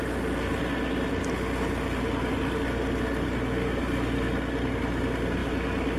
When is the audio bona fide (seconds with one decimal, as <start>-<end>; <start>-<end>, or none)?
0.0-6.0